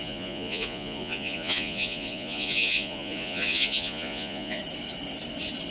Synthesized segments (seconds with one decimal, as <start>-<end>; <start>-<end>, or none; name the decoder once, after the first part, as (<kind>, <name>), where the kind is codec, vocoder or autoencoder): 0.0-4.6 (vocoder, Vocos)